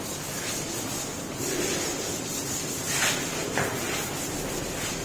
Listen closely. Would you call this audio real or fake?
real